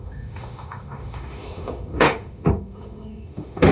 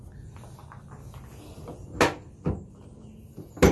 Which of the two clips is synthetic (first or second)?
first